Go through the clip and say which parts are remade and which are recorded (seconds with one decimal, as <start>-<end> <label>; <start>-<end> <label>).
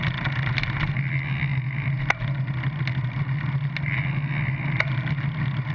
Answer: 0.0-5.7 recorded